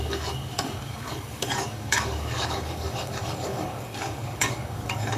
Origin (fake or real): fake